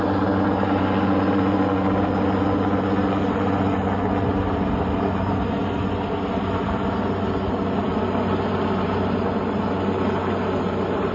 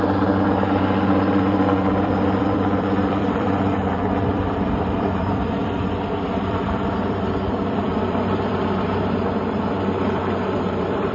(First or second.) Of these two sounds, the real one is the first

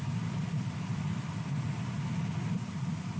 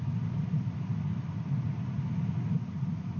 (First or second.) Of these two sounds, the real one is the second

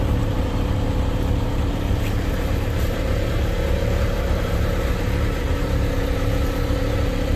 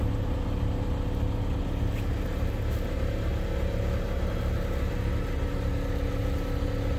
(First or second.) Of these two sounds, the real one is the second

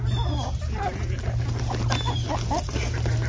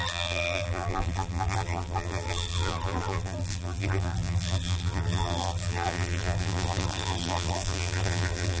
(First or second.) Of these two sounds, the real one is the first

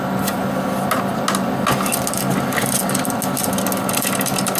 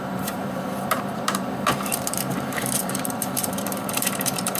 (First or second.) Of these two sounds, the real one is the first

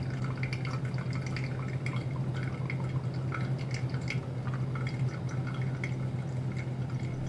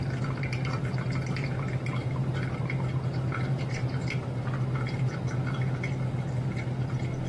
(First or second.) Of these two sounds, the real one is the first